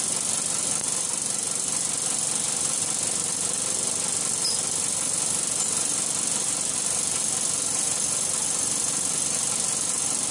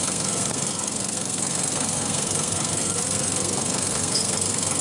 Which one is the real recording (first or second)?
first